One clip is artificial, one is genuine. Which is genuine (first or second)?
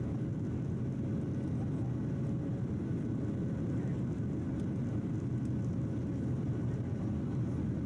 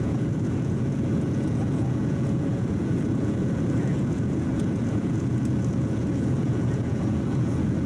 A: first